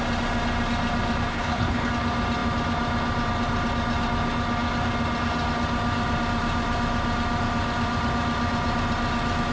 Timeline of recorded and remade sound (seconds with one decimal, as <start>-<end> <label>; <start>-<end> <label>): 0.0-1.3 recorded; 1.3-1.9 remade; 1.9-9.5 recorded